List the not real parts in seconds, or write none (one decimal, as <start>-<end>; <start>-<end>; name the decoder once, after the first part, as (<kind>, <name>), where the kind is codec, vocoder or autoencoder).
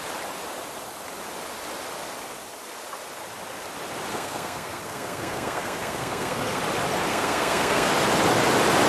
4.1-6.6 (codec, SNAC); 7.1-7.9